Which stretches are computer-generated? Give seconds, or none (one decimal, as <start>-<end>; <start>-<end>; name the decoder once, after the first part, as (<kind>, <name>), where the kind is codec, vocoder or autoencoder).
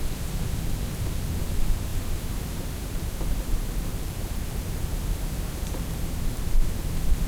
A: 0.0-7.3 (vocoder, BigVGAN v2)